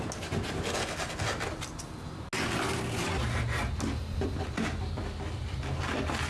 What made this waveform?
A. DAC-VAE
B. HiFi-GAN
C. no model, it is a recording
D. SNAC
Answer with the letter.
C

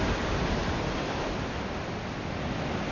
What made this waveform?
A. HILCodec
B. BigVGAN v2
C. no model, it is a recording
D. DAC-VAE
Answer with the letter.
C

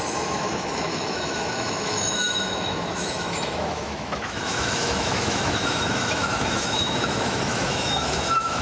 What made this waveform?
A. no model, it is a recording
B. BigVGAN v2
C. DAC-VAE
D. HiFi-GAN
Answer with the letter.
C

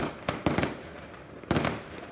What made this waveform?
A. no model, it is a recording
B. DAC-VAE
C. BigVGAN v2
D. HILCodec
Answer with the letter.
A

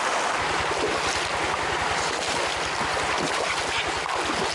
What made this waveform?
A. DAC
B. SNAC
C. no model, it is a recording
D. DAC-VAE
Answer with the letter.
C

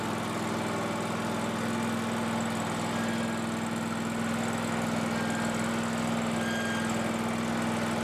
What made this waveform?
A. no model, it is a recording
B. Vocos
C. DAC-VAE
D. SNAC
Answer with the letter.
A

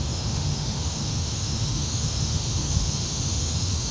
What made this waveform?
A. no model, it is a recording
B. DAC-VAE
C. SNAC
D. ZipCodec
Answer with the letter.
B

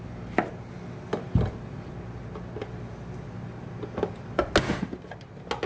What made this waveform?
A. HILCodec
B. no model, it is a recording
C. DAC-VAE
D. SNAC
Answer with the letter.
B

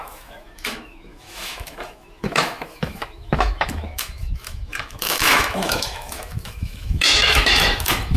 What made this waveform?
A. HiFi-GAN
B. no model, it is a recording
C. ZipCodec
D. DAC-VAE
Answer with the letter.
D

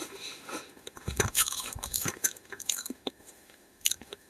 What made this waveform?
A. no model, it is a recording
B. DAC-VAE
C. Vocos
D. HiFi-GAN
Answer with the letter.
B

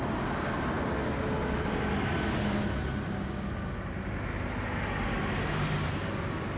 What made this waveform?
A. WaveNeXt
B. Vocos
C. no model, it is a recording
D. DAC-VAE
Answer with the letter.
C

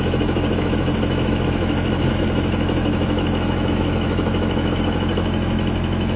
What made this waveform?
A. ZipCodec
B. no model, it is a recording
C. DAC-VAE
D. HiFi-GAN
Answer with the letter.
C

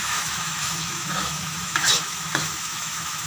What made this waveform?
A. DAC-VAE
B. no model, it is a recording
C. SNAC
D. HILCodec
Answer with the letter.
A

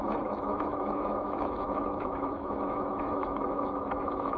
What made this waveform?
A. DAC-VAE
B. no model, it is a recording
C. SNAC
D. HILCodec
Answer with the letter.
A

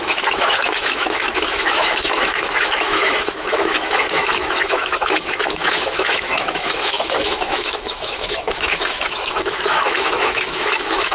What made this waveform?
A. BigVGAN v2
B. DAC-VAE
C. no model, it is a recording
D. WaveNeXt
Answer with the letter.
B